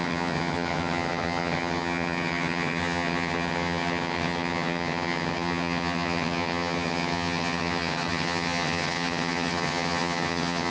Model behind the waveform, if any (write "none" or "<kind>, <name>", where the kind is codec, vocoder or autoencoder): vocoder, HiFi-GAN